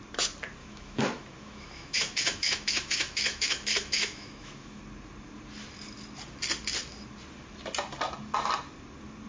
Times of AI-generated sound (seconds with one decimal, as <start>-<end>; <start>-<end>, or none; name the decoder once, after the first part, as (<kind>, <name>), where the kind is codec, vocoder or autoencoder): 0.6-4.8 (autoencoder, DAC-VAE)

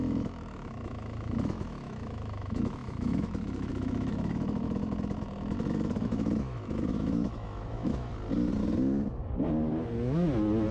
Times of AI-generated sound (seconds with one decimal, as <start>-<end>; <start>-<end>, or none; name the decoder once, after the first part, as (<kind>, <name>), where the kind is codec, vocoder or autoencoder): 0.0-8.1 (autoencoder, DAC-VAE)

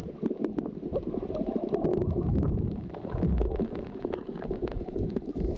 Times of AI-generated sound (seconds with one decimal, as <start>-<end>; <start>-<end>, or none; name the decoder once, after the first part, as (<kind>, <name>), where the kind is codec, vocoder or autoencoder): 1.9-5.6 (autoencoder, DAC-VAE)

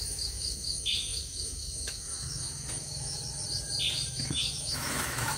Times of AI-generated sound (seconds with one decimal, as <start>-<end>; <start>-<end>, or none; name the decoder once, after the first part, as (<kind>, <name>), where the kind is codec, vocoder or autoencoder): 0.0-3.2 (autoencoder, DAC-VAE); 4.1-5.4

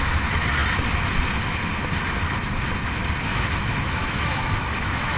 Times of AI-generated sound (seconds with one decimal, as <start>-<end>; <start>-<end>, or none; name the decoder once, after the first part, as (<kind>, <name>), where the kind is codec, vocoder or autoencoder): 3.3-5.2 (autoencoder, DAC-VAE)

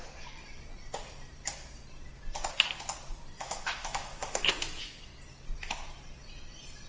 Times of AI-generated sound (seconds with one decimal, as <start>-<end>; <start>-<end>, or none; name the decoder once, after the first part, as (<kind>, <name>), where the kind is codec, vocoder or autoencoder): 3.4-5.1 (autoencoder, DAC-VAE)